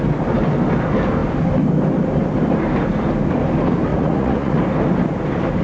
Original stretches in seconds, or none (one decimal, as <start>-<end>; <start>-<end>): 0.0-3.9; 4.6-5.6